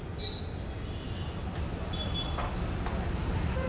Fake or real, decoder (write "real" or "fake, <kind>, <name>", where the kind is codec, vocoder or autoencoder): real